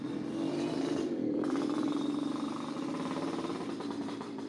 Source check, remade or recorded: recorded